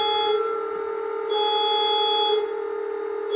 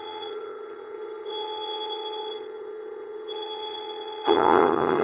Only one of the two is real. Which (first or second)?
first